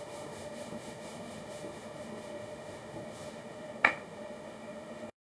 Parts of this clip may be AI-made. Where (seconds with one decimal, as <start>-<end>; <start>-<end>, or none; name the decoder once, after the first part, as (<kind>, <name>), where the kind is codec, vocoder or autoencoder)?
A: 0.0-5.2 (autoencoder, DAC-VAE)